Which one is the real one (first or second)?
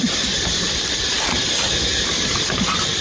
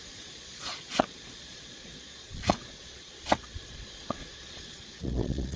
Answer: first